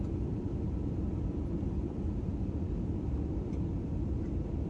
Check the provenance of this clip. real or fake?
fake